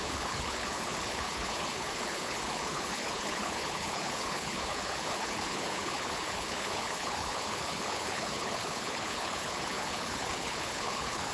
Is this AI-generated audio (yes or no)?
yes